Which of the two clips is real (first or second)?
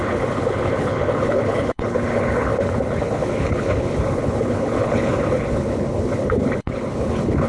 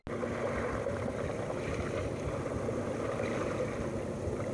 second